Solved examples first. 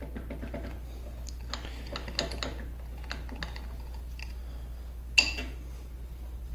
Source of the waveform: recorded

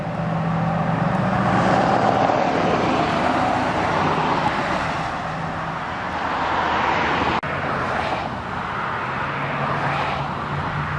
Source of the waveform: recorded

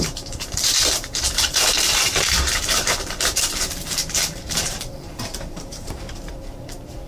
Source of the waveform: remade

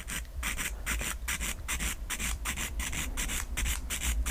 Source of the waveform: remade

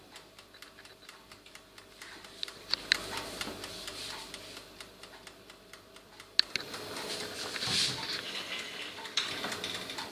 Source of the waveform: recorded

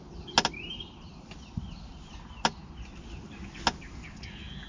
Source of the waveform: recorded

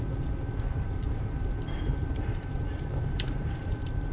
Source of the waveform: remade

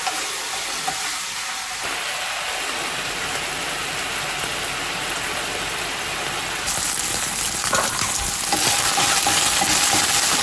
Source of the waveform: recorded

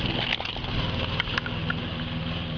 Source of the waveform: recorded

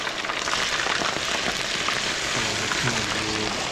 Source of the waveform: recorded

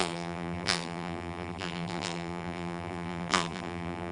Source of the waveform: remade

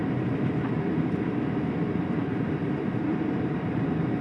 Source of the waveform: remade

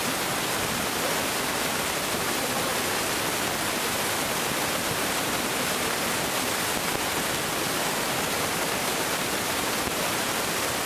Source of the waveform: remade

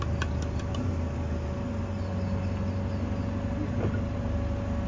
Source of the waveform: recorded